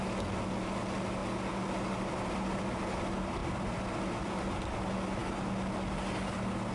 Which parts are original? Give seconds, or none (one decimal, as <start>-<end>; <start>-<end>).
0.0-3.4; 4.2-6.7